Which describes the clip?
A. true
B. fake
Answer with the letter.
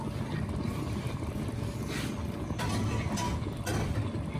A